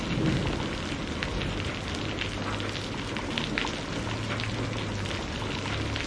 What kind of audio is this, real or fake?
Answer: real